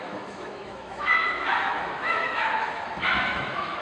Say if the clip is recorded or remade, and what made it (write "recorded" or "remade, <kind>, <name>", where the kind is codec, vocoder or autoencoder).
remade, autoencoder, DAC-VAE